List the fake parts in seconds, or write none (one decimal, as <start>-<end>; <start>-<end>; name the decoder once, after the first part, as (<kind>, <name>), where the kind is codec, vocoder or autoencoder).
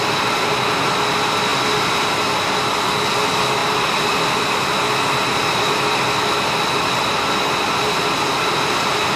none